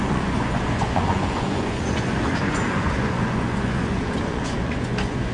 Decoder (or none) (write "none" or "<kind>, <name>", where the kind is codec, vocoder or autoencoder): vocoder, Vocos